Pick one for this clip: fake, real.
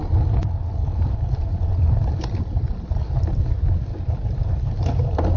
real